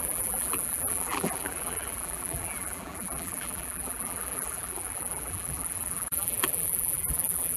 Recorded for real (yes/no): no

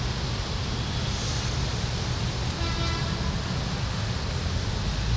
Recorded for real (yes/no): yes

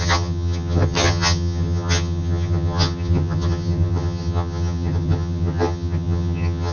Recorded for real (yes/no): no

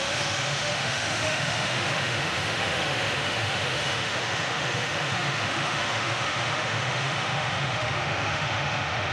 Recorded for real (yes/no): no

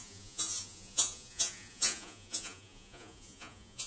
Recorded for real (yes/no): no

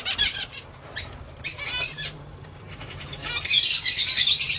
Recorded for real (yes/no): no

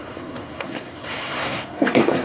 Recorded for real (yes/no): no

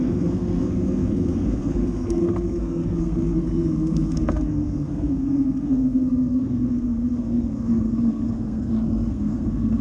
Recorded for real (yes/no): no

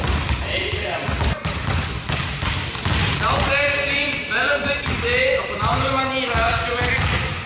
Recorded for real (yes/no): yes